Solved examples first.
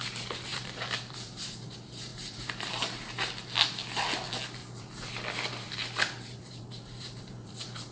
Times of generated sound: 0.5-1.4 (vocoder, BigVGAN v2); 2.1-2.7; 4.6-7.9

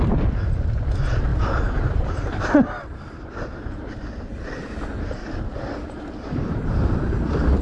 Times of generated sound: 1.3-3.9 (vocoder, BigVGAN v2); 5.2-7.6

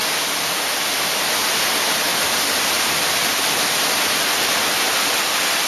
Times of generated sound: none

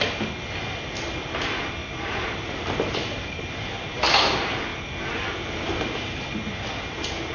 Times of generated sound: 1.8-3.4 (vocoder, BigVGAN v2)